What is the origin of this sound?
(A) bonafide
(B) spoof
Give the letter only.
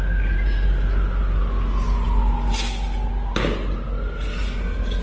A